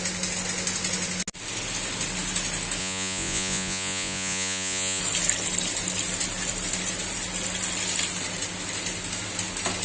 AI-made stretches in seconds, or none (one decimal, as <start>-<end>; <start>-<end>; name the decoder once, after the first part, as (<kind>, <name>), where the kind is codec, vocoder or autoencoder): 2.8-5.0 (vocoder, Vocos)